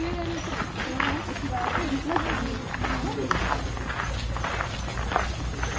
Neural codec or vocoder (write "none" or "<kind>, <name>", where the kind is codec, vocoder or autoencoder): none